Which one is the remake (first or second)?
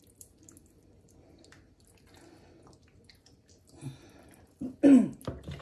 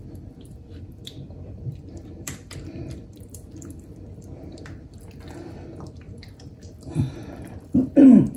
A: second